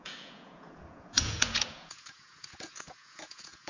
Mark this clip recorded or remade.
remade